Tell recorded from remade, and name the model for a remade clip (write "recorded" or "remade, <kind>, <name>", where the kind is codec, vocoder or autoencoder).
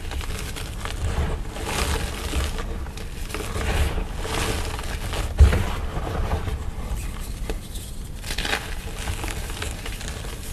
recorded